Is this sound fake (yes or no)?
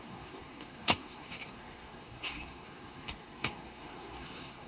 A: yes